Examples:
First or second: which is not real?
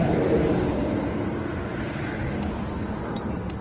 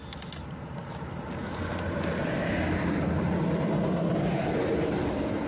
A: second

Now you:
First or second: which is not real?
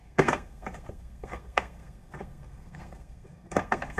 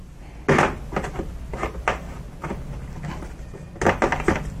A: first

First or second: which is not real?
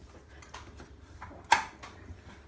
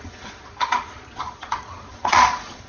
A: second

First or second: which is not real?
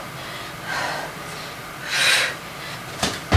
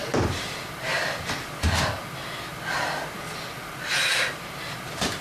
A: second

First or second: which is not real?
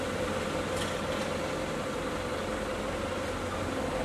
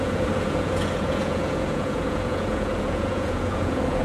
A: second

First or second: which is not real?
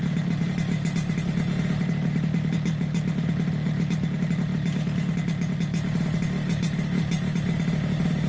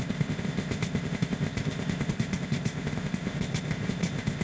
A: second